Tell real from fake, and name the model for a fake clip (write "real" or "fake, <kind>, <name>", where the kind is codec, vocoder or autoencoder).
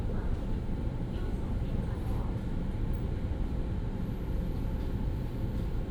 real